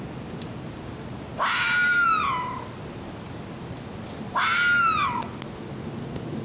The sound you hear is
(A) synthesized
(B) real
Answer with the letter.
B